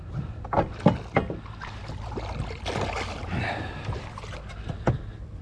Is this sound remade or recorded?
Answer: recorded